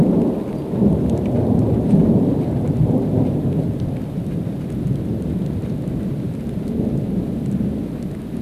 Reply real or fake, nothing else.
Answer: real